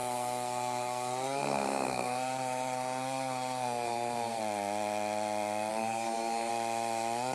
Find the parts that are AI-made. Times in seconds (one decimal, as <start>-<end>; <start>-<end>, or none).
0.0-4.4; 5.7-6.5